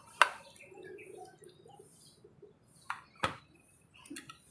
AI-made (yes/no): no